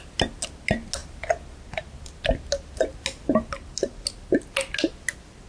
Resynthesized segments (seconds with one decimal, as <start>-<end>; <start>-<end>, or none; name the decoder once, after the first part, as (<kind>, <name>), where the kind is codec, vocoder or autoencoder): none